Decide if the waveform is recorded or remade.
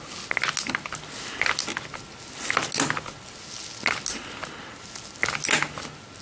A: recorded